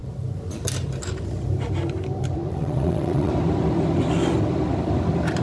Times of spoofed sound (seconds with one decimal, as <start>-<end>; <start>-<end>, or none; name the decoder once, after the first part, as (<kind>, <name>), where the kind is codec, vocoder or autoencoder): 2.5-3.3 (vocoder, WaveNeXt)

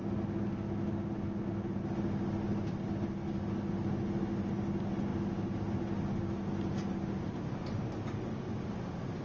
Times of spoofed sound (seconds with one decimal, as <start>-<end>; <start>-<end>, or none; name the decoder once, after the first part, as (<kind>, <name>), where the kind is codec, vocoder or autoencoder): none

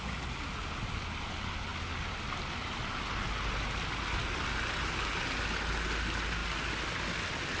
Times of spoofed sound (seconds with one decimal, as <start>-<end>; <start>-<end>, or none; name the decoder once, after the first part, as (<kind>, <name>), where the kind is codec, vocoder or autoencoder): none

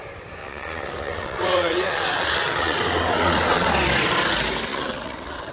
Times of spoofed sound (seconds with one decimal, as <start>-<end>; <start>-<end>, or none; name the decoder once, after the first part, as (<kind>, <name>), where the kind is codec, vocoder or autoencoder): 0.4-3.7 (vocoder, WaveNeXt); 4.7-5.5

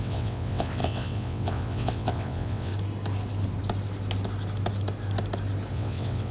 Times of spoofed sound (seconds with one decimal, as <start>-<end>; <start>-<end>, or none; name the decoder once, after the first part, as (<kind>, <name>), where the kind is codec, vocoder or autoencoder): 0.0-2.7 (vocoder, WaveNeXt); 5.7-6.3

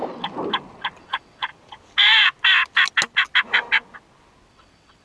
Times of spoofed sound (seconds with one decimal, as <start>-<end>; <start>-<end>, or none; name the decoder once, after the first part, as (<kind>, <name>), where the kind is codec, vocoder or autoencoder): 1.0-1.5 (vocoder, WaveNeXt); 4.5-5.0

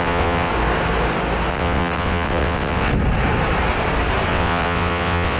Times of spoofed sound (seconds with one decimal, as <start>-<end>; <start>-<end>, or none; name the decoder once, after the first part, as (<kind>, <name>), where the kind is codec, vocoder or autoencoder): 0.0-0.5 (vocoder, WaveNeXt); 1.5-2.9; 4.3-5.4

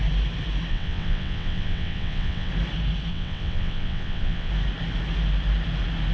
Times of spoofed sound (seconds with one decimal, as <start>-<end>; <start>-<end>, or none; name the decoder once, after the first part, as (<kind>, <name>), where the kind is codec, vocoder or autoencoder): 0.7-2.5 (vocoder, WaveNeXt); 3.1-4.5